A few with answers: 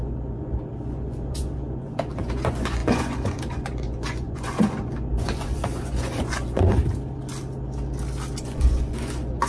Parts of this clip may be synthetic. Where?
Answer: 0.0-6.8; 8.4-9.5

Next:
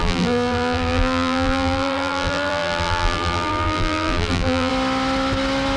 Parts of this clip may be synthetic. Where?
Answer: 0.0-4.7

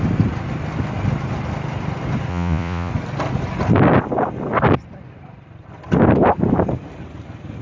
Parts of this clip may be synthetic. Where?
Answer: 2.3-2.9

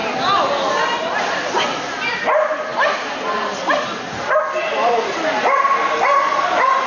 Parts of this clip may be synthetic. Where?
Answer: 0.0-1.5; 2.7-6.9

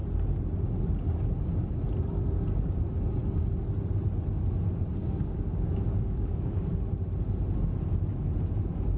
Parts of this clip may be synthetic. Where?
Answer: 5.0-6.7